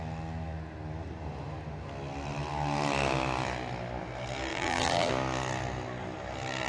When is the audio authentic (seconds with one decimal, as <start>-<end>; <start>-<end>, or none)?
0.0-4.5; 5.1-6.7